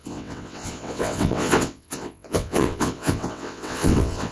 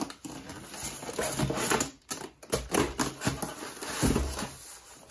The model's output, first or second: first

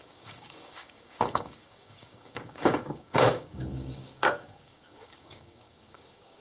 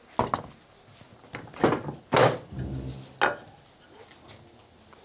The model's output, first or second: first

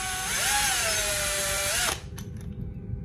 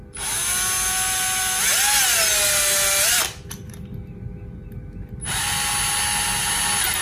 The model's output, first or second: first